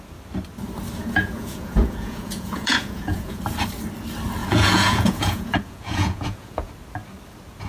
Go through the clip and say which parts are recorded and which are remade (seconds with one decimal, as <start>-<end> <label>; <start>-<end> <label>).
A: 0.0-1.0 recorded; 1.0-3.4 remade; 3.4-4.4 recorded; 4.4-6.7 remade; 6.7-7.7 recorded